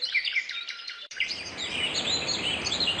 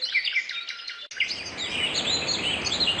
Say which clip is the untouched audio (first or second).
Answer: second